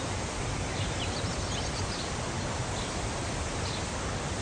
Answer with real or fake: real